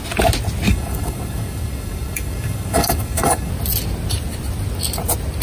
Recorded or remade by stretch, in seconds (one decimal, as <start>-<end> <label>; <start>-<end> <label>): 0.0-0.7 recorded; 0.7-3.5 remade; 3.5-5.4 recorded